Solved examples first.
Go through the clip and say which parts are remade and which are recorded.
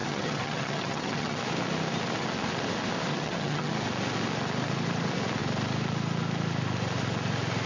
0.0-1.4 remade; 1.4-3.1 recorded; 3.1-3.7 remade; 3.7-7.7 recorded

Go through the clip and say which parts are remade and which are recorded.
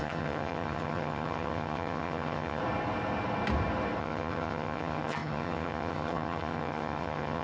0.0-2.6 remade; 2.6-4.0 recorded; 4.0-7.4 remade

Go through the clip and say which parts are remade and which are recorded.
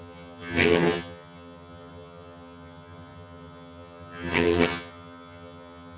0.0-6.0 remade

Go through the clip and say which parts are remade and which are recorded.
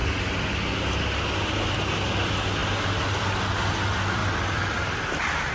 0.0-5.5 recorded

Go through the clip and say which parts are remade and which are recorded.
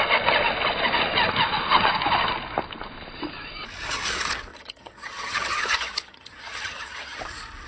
0.0-4.5 recorded; 4.5-7.2 remade; 7.2-7.7 recorded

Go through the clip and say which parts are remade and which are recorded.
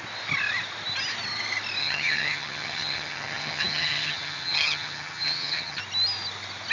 0.0-1.8 recorded; 1.8-5.8 remade; 5.8-6.7 recorded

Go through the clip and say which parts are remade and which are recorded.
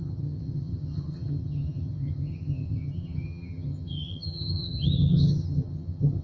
0.0-6.2 remade